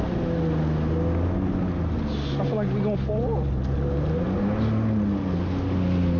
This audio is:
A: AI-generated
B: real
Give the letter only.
B